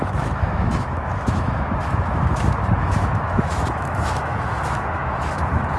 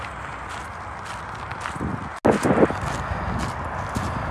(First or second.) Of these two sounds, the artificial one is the first